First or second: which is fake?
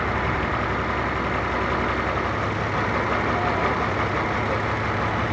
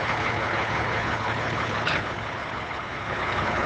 second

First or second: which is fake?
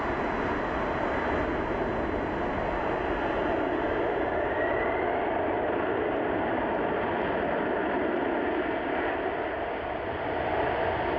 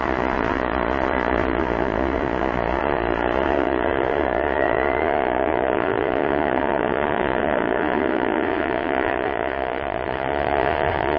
second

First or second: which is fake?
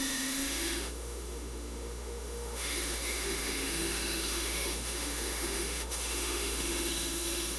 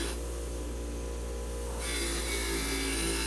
first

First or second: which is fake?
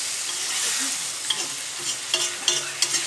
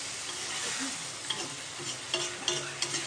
second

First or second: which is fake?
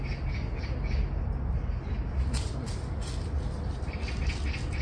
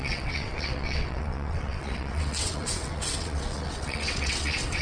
second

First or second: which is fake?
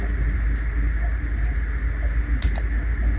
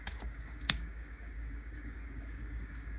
second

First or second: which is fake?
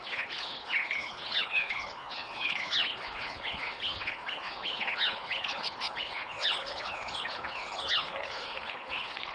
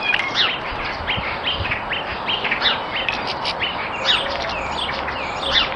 first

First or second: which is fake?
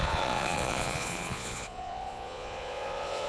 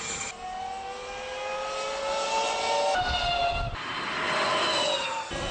first